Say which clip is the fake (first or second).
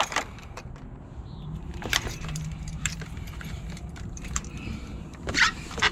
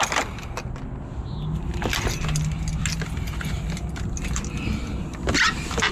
first